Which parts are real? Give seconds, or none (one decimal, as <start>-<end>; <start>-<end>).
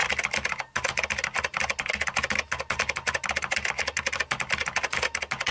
0.0-5.5